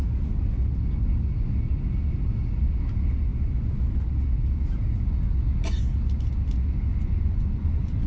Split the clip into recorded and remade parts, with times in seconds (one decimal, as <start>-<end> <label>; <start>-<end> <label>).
0.0-6.9 recorded; 6.9-8.1 remade